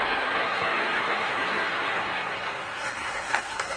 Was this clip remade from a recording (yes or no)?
yes